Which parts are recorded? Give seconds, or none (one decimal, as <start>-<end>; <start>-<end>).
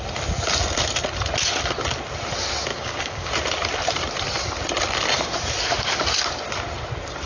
0.0-2.7; 3.3-7.3